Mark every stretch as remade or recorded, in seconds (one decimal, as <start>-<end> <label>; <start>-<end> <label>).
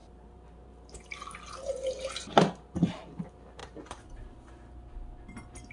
0.0-1.7 remade; 1.7-3.6 recorded; 3.6-4.3 remade; 4.3-5.7 recorded